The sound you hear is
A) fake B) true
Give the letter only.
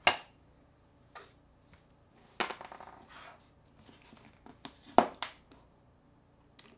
B